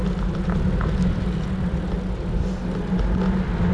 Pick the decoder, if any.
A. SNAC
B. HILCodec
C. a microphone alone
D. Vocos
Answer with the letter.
C